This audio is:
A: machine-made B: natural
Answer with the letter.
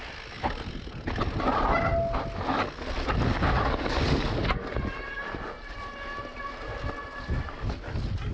B